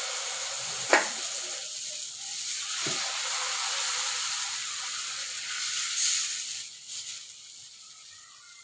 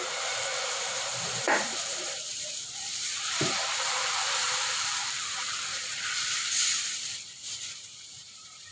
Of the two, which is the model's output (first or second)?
second